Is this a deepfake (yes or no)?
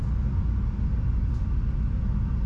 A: no